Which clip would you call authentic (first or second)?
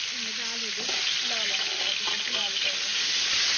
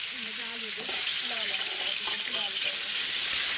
first